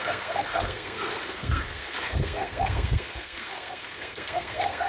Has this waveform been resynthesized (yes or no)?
yes